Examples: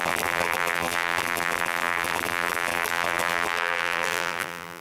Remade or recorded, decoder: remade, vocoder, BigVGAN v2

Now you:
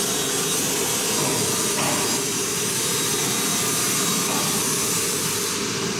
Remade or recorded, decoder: recorded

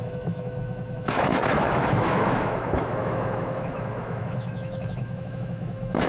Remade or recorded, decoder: remade, autoencoder, DAC-VAE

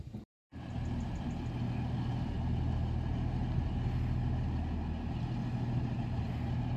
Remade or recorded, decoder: recorded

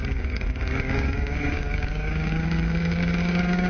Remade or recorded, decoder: remade, codec, DAC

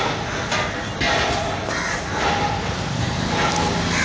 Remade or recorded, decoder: recorded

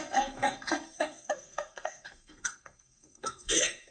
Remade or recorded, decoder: remade, codec, SNAC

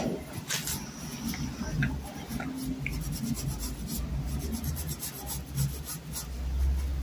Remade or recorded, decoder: recorded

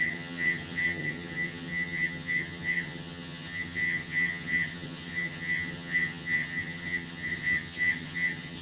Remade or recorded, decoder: remade, vocoder, HiFi-GAN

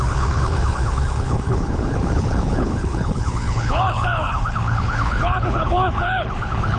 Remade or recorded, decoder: remade, codec, HILCodec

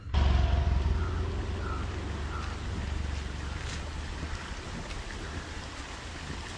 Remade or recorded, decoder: recorded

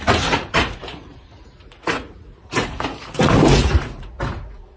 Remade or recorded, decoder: remade, vocoder, Vocos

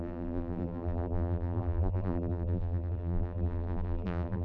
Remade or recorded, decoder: remade, vocoder, BigVGAN v2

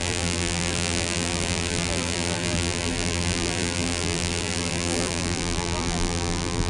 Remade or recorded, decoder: remade, vocoder, BigVGAN v2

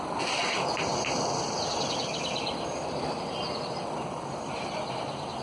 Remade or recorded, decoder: recorded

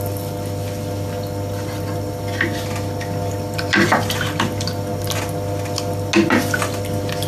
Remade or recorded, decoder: recorded